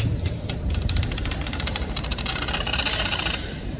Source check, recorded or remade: remade